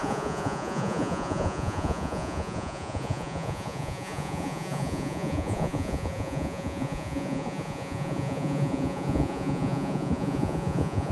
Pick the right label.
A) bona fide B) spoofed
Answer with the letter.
B